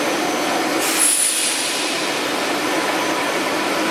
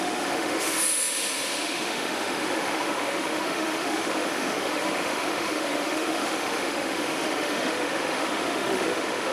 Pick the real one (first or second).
first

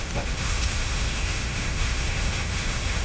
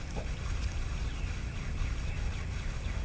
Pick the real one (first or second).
second